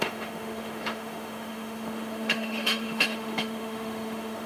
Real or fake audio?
fake